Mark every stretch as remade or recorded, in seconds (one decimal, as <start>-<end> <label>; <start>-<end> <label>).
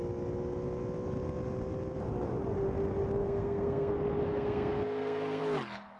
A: 0.0-3.2 recorded; 3.2-3.9 remade; 3.9-4.3 recorded; 4.3-5.4 remade; 5.4-6.0 recorded